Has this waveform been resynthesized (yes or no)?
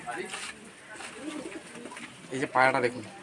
yes